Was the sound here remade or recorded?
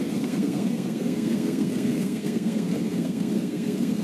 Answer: remade